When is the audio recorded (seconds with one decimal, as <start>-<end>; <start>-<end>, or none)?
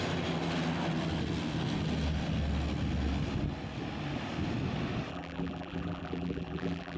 0.0-5.1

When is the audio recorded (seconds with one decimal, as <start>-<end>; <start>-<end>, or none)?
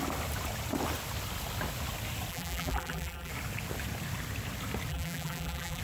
0.0-2.3; 3.3-4.9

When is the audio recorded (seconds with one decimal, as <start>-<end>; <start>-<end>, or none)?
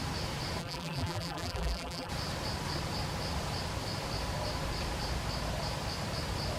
0.0-0.6; 2.1-6.6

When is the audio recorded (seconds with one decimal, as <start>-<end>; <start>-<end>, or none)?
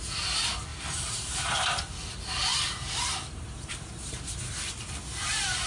0.0-0.7; 1.5-2.5; 4.6-5.7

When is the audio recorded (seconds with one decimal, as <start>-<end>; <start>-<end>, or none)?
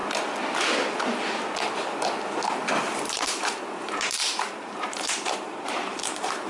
0.0-3.1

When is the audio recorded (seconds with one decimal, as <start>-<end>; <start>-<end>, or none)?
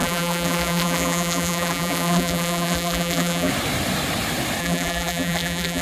3.5-4.6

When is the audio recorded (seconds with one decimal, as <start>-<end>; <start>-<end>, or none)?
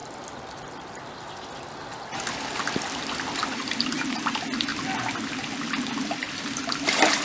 0.0-2.3; 4.7-6.2